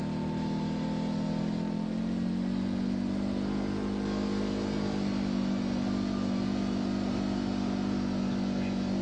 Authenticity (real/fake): real